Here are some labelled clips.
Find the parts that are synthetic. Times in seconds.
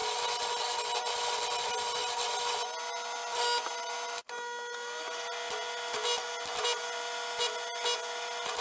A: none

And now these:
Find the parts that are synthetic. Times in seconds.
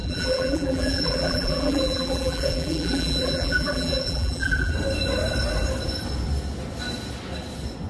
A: 0.0-4.7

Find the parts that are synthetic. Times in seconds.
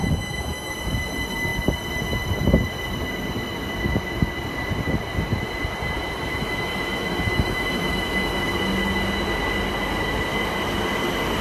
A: 0.0-0.7; 6.3-8.6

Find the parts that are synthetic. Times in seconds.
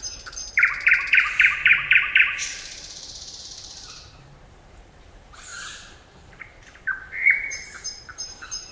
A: 0.0-8.7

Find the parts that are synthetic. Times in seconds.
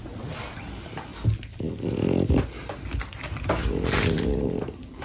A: none